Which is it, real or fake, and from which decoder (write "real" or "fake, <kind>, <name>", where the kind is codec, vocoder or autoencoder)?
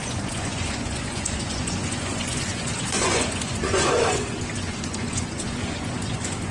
fake, vocoder, Vocos